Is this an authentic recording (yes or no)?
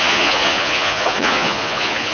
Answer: no